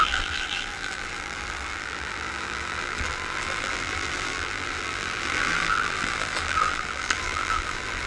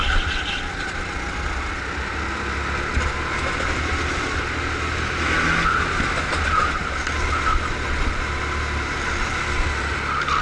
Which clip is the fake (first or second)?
first